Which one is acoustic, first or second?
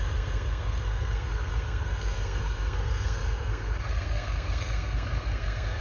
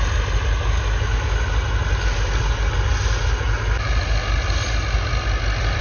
second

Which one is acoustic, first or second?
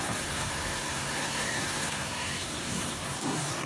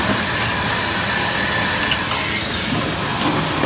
second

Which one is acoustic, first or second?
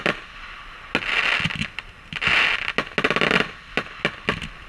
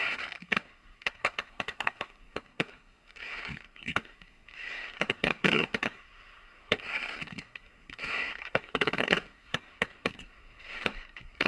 first